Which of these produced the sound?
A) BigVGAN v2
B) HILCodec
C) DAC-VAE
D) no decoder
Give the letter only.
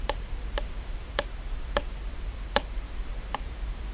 A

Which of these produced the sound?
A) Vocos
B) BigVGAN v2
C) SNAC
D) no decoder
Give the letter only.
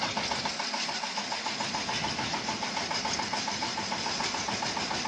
B